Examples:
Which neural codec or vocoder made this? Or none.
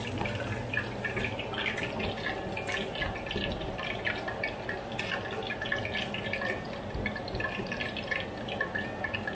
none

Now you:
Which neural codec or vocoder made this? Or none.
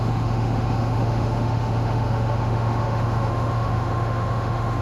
autoencoder, DAC-VAE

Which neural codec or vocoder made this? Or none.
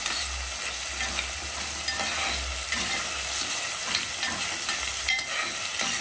none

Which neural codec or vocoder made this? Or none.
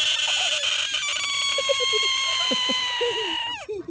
none